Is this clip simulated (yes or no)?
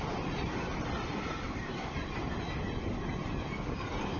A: no